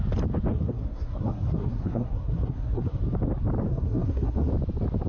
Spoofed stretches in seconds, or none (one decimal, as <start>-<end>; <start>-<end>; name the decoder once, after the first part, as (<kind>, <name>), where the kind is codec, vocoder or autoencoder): 0.5-3.0 (codec, SNAC); 3.7-4.5